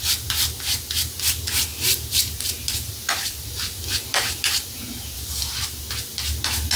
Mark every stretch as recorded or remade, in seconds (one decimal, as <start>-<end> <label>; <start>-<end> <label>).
0.0-1.7 recorded; 1.7-5.8 remade; 5.8-6.8 recorded